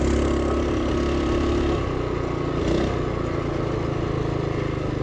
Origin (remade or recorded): recorded